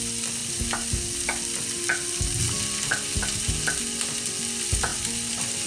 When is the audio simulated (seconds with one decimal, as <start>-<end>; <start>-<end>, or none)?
none